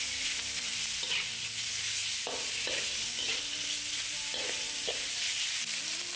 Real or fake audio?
real